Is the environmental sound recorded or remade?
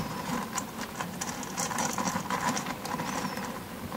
recorded